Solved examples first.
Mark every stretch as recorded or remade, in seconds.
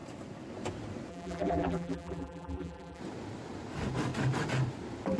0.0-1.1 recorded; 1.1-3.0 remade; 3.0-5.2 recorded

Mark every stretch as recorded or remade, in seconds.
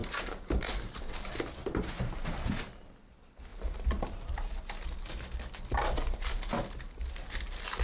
0.0-0.8 remade; 0.8-1.6 recorded; 1.6-2.3 remade; 2.3-3.5 recorded; 3.5-4.3 remade; 4.3-7.8 recorded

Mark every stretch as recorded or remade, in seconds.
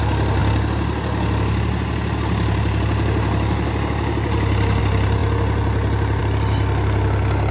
0.0-7.5 recorded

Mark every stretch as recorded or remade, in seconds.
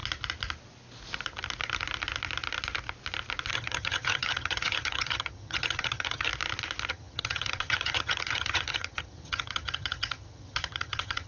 0.0-3.5 recorded; 3.5-6.3 remade; 6.3-6.9 recorded; 6.9-11.3 remade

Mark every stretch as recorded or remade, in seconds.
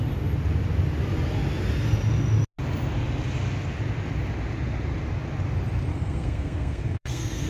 0.0-5.9 recorded; 5.9-7.5 remade